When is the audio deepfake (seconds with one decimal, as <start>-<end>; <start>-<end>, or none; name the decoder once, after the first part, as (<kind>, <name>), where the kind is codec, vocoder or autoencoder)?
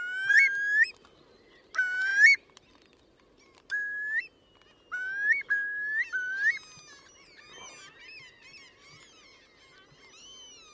none